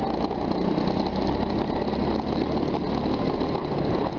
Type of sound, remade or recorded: recorded